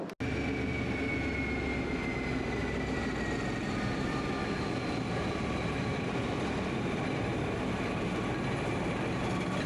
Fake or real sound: real